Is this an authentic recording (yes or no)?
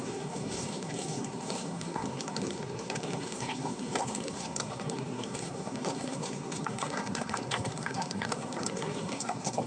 no